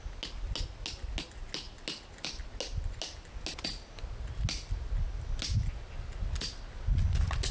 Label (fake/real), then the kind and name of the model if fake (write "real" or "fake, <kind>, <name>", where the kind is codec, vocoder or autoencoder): real